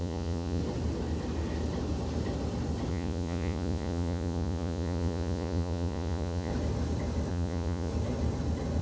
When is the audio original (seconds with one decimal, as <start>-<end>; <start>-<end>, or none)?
0.6-2.9; 6.5-7.3; 7.9-8.8